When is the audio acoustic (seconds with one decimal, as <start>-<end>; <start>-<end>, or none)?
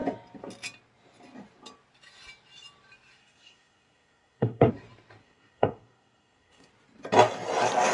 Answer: 0.0-3.2; 4.7-5.2; 6.7-7.9